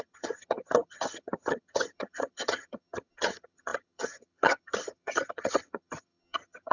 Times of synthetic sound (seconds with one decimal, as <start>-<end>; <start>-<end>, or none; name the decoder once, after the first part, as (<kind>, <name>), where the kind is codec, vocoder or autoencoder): 0.0-6.7 (vocoder, HiFi-GAN)

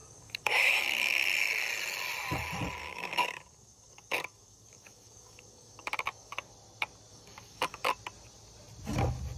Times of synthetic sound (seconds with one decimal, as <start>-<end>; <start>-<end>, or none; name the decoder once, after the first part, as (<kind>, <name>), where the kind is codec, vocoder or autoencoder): 0.0-0.7 (codec, DAC); 2.8-6.5; 7.1-7.9

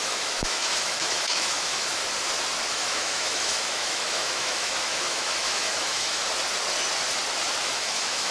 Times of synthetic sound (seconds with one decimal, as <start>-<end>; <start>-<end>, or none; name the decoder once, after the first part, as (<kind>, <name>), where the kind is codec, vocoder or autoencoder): 0.0-2.0 (autoencoder, DAC-VAE); 2.7-6.2; 7.6-8.3

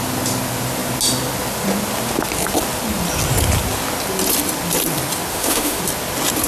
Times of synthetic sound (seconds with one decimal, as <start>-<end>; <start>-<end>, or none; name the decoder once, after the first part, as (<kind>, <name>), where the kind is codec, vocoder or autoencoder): 5.3-5.8 (autoencoder, DAC-VAE)

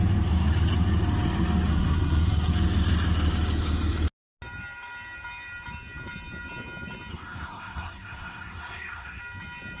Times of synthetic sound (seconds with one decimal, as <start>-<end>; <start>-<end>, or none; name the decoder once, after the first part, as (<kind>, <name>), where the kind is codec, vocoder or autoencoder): 1.7-2.5 (codec, SNAC); 7.1-9.2